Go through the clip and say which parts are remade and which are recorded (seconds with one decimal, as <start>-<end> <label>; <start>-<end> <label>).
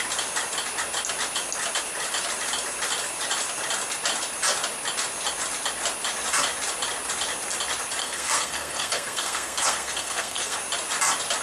0.0-8.0 recorded; 8.0-10.6 remade; 10.6-11.4 recorded